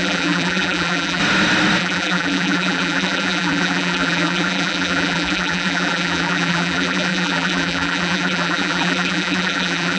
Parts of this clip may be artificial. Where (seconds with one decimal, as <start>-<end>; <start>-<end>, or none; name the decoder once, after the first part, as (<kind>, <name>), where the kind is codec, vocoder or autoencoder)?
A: 0.0-1.2 (vocoder, BigVGAN v2); 1.8-10.0